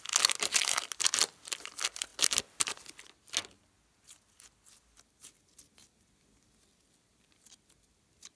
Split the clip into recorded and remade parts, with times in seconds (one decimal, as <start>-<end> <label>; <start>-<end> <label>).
0.0-8.4 recorded